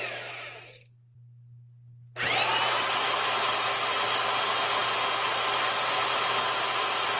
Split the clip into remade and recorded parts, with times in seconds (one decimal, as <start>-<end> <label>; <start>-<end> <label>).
0.0-7.2 recorded